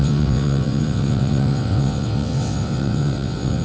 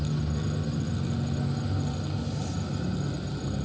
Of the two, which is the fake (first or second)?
first